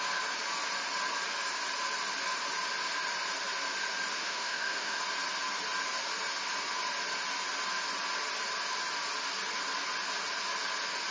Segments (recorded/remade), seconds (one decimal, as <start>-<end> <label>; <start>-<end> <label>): 0.0-4.2 recorded; 4.2-5.0 remade; 5.0-11.1 recorded